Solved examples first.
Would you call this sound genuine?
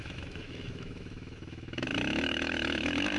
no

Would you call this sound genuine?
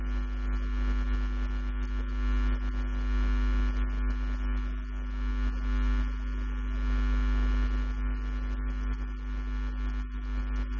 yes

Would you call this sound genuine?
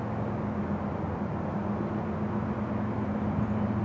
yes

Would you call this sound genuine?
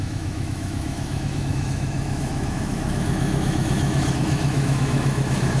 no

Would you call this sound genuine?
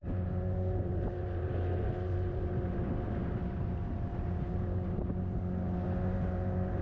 no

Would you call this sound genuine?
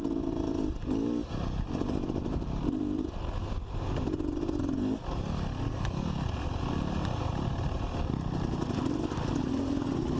yes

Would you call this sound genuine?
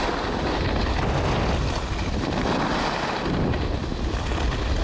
yes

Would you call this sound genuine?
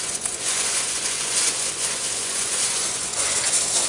no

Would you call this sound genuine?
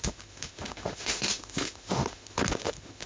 no